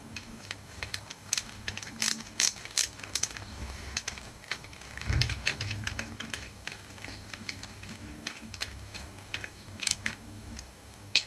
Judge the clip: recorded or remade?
remade